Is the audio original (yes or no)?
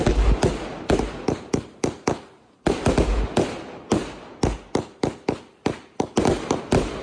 yes